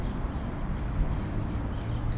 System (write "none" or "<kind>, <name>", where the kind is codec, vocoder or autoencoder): none